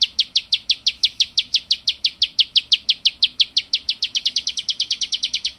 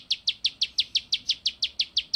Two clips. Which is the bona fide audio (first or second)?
second